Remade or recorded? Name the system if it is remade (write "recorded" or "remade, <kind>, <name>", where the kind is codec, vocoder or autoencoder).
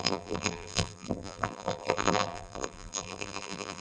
remade, vocoder, BigVGAN v2